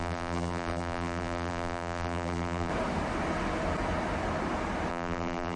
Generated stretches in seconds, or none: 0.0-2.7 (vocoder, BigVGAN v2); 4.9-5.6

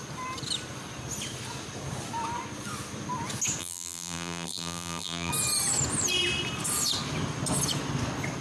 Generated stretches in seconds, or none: 3.6-5.3 (vocoder, BigVGAN v2)

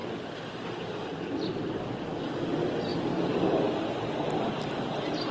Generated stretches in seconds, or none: 0.0-2.5 (vocoder, BigVGAN v2)

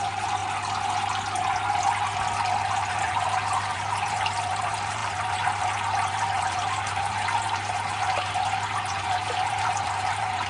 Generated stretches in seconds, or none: 0.0-0.4 (vocoder, BigVGAN v2); 2.9-10.5

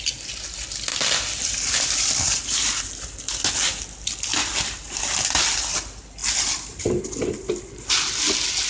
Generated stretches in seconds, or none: 0.9-2.8 (vocoder, BigVGAN v2); 4.3-5.0; 6.2-7.8